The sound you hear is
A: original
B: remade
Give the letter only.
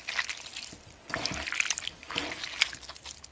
A